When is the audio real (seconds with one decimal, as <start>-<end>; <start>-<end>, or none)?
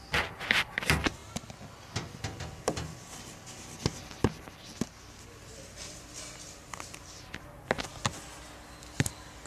0.0-9.5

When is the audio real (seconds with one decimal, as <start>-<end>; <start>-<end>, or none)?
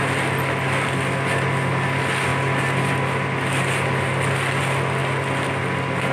0.0-6.1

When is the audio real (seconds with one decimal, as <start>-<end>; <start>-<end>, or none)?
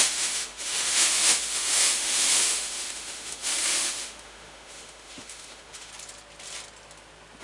5.9-7.4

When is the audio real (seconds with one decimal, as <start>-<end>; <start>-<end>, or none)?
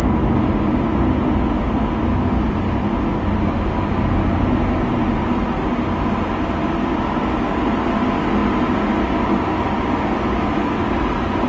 0.0-11.5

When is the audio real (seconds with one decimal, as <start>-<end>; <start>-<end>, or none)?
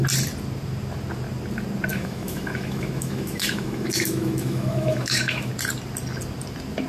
0.0-1.9; 5.5-6.9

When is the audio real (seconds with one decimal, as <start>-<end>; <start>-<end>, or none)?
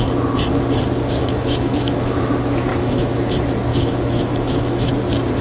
0.0-1.2; 2.3-2.7; 3.3-3.7; 4.9-5.4